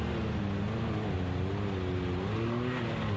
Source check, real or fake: real